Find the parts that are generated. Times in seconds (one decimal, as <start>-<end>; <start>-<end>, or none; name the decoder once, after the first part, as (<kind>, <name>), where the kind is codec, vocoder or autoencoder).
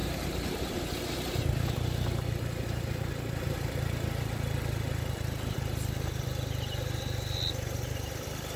0.0-1.7 (vocoder, BigVGAN v2)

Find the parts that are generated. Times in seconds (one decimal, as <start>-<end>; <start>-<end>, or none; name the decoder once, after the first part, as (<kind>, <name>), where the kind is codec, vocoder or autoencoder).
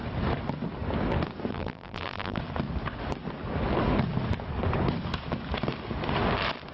1.5-2.4 (vocoder, BigVGAN v2)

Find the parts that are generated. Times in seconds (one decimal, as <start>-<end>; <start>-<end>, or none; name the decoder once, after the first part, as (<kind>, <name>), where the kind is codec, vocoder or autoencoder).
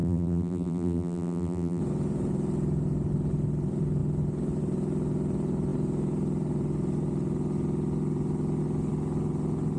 0.0-1.8 (vocoder, BigVGAN v2)